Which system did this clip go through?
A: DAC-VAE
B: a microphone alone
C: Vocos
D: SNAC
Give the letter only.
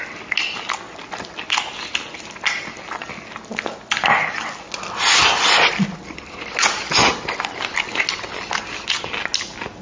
B